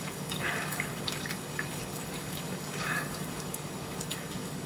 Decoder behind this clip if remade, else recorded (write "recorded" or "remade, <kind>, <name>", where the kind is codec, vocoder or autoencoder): remade, codec, DAC